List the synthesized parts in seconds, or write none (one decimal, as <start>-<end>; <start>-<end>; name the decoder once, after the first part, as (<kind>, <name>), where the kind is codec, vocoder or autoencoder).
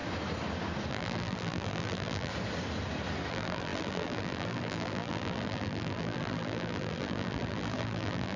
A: 0.9-2.3 (vocoder, BigVGAN v2); 3.3-8.4